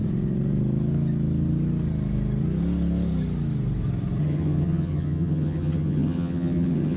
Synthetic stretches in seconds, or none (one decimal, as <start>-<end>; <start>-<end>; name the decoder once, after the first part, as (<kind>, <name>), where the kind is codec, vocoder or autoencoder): 4.2-7.0 (vocoder, HiFi-GAN)